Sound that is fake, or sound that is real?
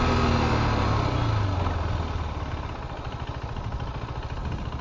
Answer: real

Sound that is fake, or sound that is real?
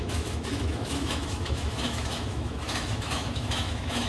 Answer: fake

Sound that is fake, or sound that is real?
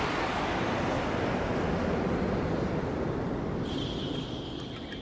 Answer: real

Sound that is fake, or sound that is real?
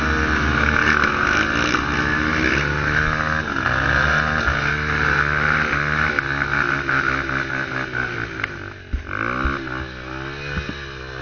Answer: real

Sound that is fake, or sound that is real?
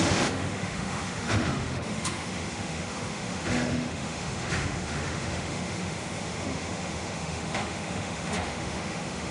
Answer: fake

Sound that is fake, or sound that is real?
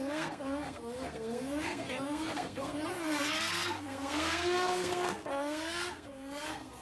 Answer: fake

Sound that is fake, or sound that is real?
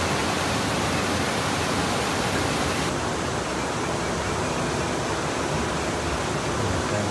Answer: real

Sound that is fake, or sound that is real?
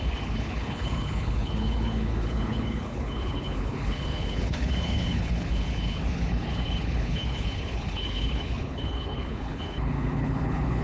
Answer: fake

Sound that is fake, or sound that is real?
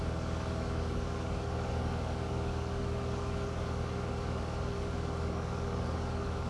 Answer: fake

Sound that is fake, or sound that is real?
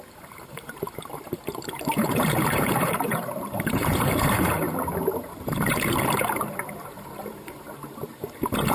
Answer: fake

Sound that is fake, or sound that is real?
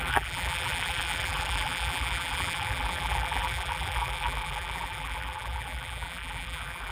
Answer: fake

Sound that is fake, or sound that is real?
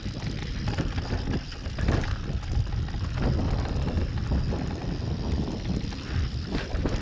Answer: real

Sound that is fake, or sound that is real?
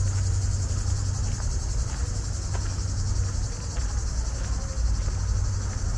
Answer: real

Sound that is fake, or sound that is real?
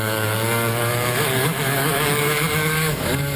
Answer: fake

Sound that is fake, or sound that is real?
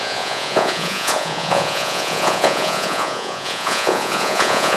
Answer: fake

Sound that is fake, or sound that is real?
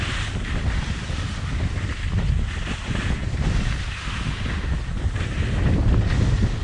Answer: real